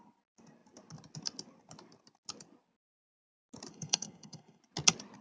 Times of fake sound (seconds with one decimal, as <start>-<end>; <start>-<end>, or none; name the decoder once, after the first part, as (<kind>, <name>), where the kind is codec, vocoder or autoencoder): 3.7-4.6 (codec, SNAC)